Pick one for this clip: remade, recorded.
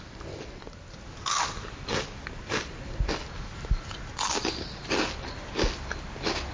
recorded